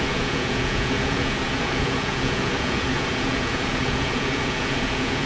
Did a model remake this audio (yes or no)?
yes